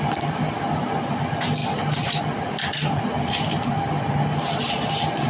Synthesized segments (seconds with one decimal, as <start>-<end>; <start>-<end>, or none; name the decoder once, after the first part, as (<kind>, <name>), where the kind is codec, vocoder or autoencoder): none